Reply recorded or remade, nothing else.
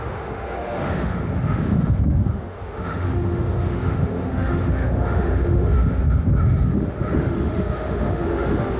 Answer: remade